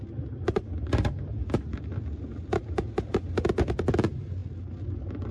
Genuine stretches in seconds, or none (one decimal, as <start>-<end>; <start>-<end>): 0.0-5.3